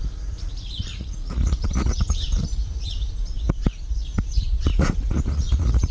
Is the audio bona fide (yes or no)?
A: no